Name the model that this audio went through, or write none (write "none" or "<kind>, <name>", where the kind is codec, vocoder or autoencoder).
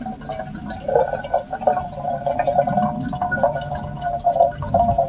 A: none